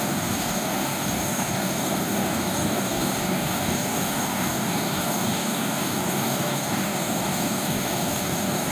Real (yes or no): no